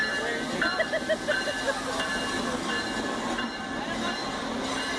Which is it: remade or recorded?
recorded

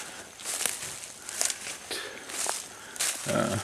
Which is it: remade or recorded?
recorded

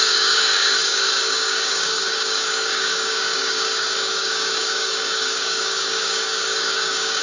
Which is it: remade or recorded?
remade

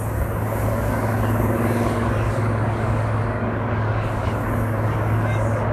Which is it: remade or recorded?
remade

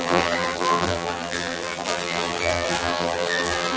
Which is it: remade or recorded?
remade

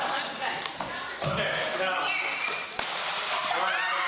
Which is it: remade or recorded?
recorded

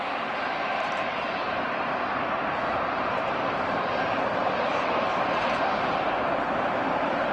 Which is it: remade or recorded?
remade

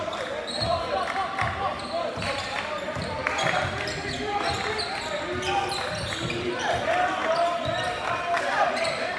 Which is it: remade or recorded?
recorded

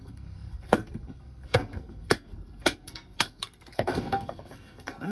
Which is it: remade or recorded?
remade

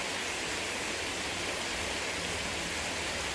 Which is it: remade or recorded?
recorded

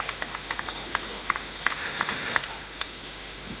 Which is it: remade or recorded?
remade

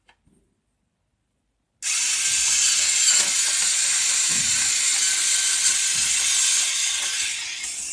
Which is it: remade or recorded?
recorded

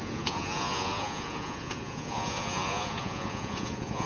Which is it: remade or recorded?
remade